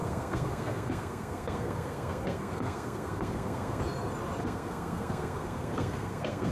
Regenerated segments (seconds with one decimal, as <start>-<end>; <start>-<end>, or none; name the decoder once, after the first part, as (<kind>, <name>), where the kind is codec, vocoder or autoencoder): 0.0-3.8 (codec, SNAC); 4.4-6.5